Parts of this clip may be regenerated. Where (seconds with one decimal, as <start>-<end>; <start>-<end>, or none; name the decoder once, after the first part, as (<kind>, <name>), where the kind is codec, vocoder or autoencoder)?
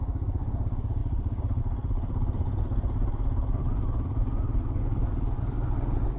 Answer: 1.0-1.6 (vocoder, BigVGAN v2)